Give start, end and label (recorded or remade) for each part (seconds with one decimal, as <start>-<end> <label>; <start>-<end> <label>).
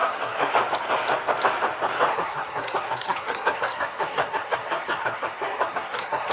0.0-0.5 remade; 0.5-2.1 recorded; 2.1-6.3 remade